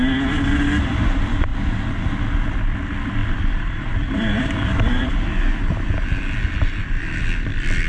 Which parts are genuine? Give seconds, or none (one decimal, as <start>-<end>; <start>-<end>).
0.0-1.5; 2.1-3.2